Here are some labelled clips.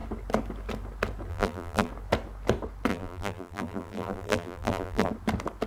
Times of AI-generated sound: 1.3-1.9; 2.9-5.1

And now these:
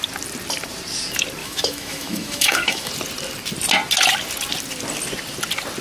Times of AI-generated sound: 1.4-2.9

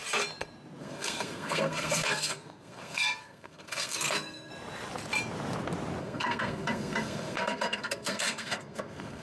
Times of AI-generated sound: 0.8-4.5; 6.0-9.2

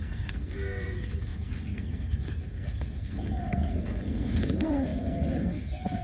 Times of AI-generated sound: 0.0-6.0

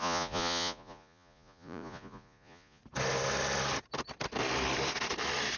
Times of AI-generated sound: 0.0-2.8

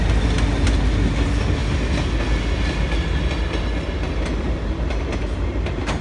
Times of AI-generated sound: none

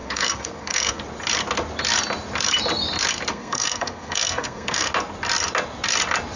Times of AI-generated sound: 0.0-1.0; 3.3-4.9

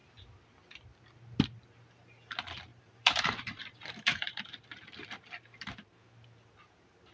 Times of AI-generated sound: 2.7-4.4